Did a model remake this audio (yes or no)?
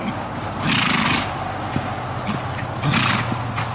no